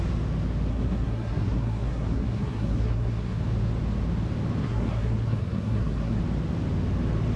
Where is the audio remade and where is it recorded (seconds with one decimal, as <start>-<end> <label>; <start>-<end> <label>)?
0.0-0.7 recorded; 0.7-3.4 remade; 3.4-4.6 recorded; 4.6-6.2 remade; 6.2-7.4 recorded